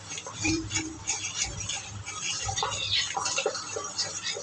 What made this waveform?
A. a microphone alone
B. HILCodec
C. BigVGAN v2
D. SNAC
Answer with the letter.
C